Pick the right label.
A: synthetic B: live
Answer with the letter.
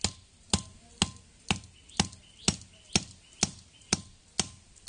B